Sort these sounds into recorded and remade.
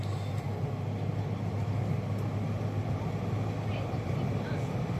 recorded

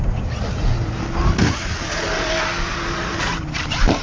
recorded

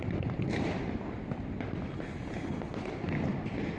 recorded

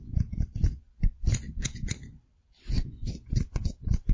remade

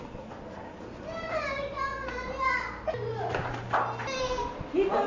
recorded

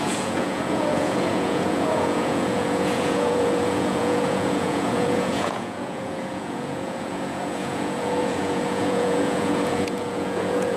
remade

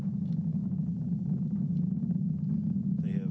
recorded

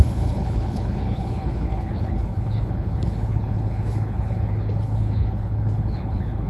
remade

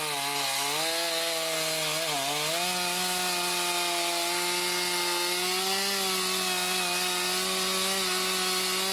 recorded